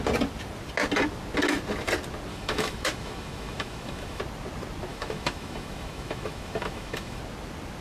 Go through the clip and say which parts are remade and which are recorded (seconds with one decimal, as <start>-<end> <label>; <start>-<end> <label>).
0.0-2.3 recorded; 2.3-4.2 remade; 4.2-4.9 recorded; 4.9-7.2 remade; 7.2-7.8 recorded